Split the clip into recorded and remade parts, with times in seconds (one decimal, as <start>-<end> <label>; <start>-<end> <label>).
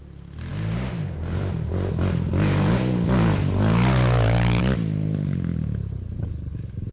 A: 0.0-6.9 recorded